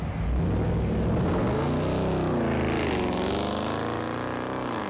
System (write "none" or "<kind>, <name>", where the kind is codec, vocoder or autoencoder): none